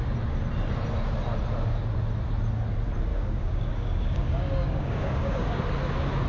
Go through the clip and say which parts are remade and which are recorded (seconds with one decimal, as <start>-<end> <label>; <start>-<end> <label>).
0.0-3.1 recorded; 3.1-5.6 remade; 5.6-6.3 recorded